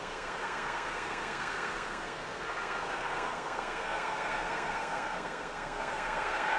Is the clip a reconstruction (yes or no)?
yes